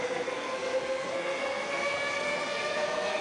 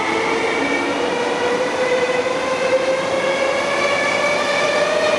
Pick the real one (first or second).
second